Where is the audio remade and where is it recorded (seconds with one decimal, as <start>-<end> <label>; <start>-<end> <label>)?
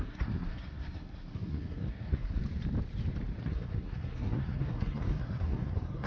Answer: 0.0-2.4 remade; 2.4-3.4 recorded; 3.4-6.1 remade